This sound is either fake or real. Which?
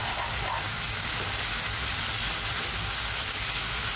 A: real